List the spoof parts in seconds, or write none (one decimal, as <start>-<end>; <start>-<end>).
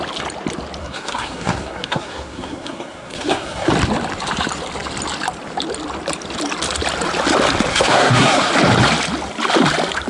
0.8-3.7; 7.7-8.5